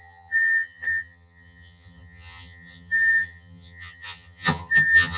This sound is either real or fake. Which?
fake